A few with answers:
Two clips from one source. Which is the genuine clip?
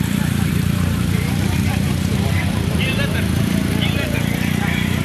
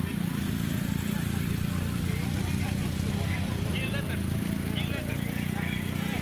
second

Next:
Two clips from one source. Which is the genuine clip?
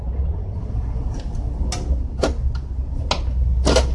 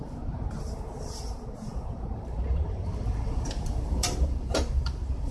first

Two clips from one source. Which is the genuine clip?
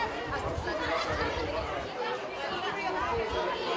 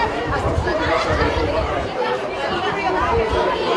first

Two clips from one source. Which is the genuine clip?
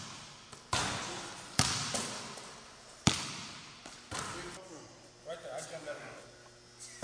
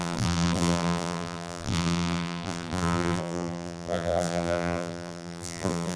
first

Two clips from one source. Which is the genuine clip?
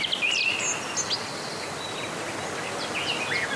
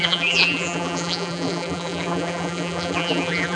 first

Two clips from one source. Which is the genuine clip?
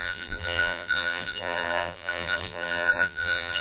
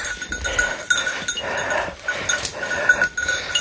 second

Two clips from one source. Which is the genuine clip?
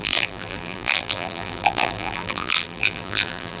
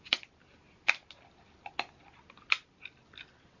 second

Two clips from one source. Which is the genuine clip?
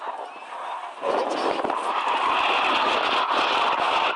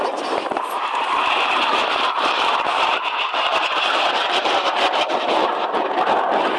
first